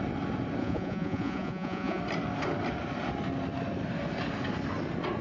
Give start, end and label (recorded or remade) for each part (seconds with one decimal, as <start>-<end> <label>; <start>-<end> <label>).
0.0-0.6 recorded; 0.6-2.0 remade; 2.0-5.2 recorded